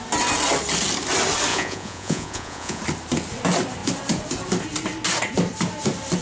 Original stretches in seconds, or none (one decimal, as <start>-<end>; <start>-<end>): 0.0-1.5; 2.8-6.2